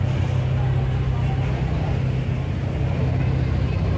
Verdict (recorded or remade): recorded